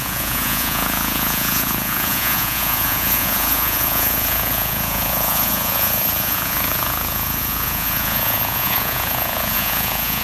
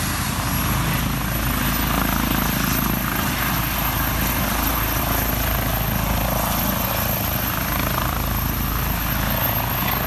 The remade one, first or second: first